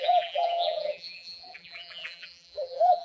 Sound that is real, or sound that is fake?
fake